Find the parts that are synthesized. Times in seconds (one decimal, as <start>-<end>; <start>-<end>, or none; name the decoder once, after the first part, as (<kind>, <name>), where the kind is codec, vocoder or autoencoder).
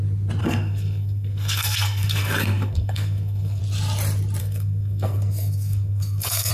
0.4-3.6 (codec, SNAC); 4.4-6.5